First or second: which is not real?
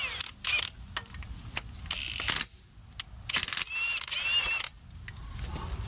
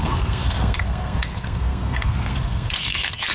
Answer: second